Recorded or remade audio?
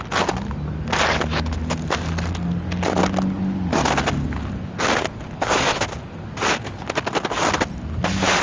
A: recorded